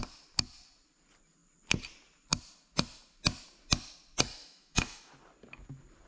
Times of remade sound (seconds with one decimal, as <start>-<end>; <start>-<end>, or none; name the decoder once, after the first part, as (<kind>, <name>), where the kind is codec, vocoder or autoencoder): 4.4-5.1 (autoencoder, DAC-VAE)